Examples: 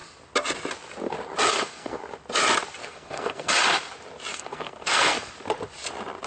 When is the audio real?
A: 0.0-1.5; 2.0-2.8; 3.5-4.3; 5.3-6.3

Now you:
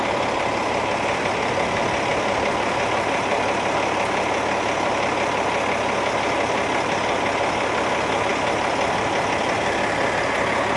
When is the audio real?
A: 0.0-10.8

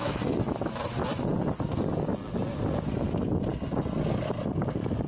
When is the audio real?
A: 0.0-5.1

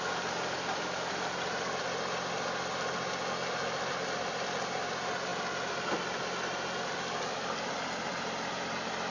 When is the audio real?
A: 0.0-9.1

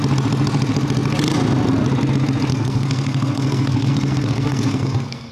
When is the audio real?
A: 0.0-2.5